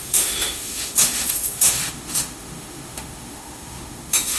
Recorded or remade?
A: remade